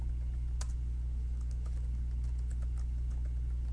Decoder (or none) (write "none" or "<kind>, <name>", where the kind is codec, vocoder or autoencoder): none